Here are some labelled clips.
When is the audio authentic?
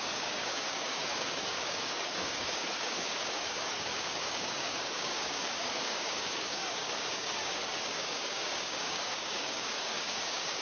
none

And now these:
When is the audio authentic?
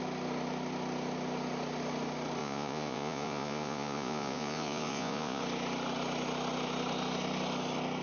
0.0-2.4; 5.4-8.0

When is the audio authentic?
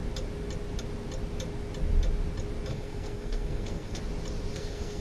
0.0-2.7; 4.0-4.5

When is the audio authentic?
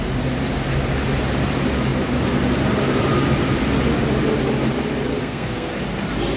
0.0-5.1; 5.7-6.4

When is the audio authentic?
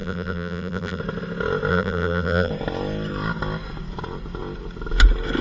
1.0-1.7; 2.5-5.4